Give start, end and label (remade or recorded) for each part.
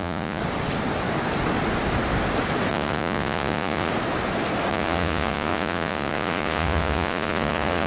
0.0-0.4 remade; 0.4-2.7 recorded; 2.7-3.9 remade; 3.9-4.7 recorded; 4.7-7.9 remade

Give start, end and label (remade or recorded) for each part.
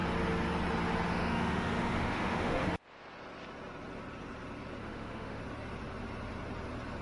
0.0-1.1 recorded; 1.1-2.7 remade; 2.7-4.8 recorded; 4.8-5.4 remade; 5.4-7.0 recorded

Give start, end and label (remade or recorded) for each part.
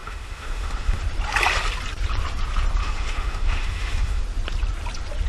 0.0-1.0 remade; 1.0-2.8 recorded; 2.8-4.2 remade; 4.2-5.3 recorded